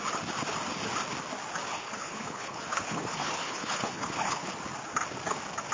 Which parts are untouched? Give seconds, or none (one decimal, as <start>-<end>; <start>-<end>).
0.0-1.7; 4.5-5.7